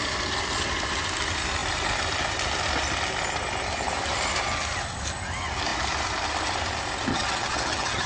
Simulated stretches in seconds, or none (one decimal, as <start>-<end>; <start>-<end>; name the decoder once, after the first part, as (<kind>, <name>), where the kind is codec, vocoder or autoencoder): 7.1-8.1 (vocoder, HiFi-GAN)